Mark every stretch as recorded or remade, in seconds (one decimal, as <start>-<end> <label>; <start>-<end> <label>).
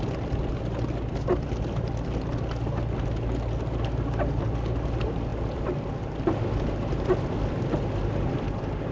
0.0-8.9 recorded